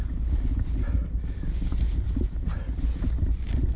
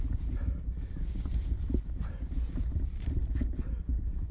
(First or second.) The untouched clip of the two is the first